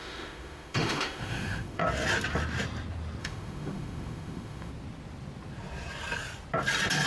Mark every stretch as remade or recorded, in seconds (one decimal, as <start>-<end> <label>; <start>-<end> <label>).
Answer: 0.0-1.8 remade; 1.8-3.2 recorded; 3.2-4.7 remade; 4.7-7.1 recorded